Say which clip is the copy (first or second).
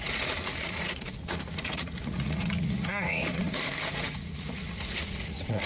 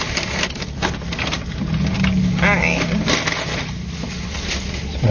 first